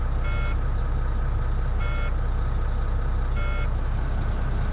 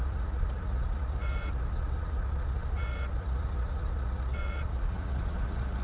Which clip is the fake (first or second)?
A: second